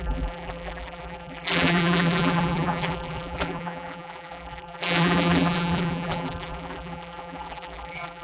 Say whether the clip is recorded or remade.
remade